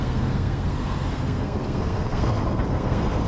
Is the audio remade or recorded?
remade